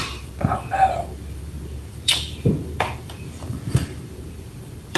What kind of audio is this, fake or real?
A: fake